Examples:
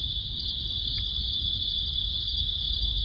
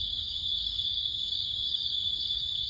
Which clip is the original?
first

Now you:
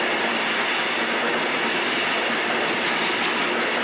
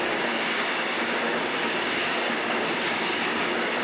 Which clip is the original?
first